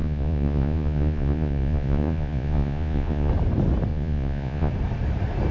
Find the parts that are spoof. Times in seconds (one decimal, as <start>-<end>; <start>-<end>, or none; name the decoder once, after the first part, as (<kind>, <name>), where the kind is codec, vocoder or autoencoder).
0.0-3.3 (vocoder, Vocos); 3.9-4.7